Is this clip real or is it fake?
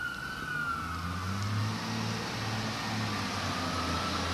real